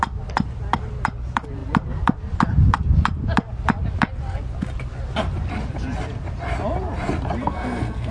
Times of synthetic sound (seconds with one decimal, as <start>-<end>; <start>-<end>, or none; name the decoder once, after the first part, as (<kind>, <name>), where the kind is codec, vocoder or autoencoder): 7.4-8.1 (codec, SNAC)